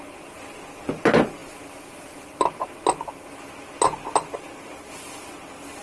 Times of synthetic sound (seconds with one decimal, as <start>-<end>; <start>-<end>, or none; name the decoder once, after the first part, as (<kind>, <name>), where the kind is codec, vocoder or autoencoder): none